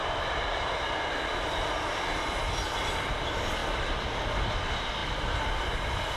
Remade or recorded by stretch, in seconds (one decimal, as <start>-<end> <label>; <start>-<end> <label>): 0.0-3.2 remade; 3.2-5.0 recorded; 5.0-6.2 remade